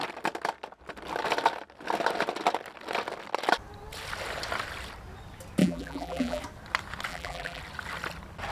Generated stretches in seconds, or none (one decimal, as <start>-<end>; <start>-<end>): 5.6-6.4; 7.1-7.6